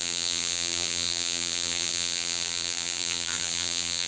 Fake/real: fake